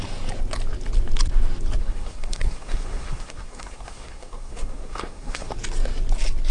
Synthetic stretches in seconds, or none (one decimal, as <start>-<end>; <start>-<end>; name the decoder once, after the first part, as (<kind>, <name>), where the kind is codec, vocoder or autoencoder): 1.8-5.5 (codec, SNAC)